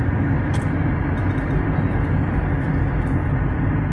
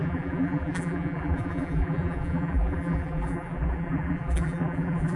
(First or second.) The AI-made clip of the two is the second